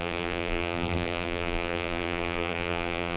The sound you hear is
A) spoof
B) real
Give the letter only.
A